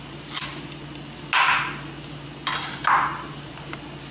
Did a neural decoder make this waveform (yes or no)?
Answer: no